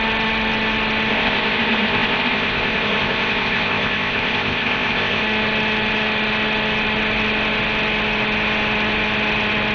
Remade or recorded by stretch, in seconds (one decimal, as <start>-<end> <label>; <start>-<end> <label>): 0.0-1.1 recorded; 1.1-5.2 remade; 5.2-9.7 recorded